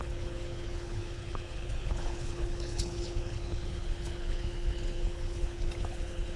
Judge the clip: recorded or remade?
remade